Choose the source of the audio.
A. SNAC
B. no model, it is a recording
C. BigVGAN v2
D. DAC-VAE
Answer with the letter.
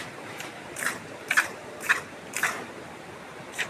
C